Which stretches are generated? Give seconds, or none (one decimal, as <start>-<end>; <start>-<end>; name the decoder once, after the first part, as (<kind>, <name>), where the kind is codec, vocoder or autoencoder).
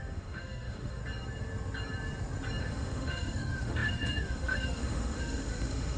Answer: 0.0-1.0 (autoencoder, DAC-VAE); 2.6-6.0